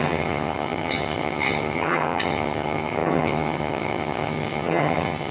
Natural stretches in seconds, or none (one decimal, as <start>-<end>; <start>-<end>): none